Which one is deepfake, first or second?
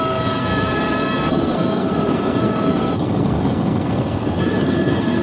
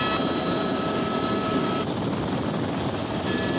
first